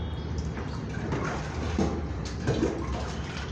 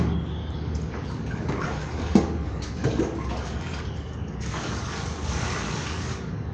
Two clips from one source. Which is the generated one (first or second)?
second